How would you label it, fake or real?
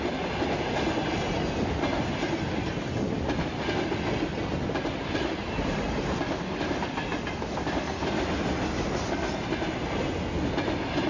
real